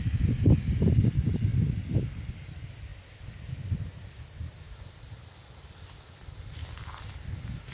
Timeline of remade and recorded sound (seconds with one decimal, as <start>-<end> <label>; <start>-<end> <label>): 0.0-2.9 remade; 2.9-6.1 recorded; 6.1-7.7 remade